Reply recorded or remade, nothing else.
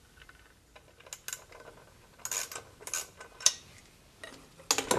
recorded